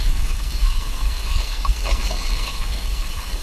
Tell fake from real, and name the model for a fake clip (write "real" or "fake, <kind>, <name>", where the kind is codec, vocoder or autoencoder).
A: fake, codec, SNAC